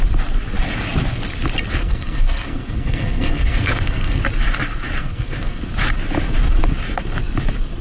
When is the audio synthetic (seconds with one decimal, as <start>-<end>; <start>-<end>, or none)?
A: 1.8-4.2; 5.0-5.6